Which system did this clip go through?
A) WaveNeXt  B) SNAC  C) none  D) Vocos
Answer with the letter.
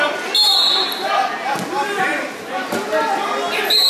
C